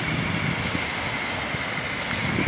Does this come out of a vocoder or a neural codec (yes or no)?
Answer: no